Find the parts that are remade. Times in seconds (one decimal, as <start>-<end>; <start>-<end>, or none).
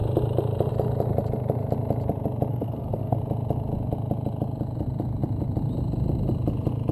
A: 2.5-3.2